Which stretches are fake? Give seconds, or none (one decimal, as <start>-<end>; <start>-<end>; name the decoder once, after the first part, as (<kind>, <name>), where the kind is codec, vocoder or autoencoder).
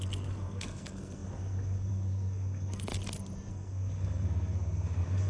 0.0-2.9 (codec, SNAC); 3.5-5.3